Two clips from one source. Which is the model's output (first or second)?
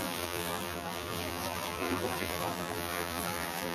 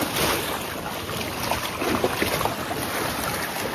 first